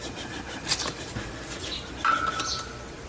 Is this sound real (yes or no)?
yes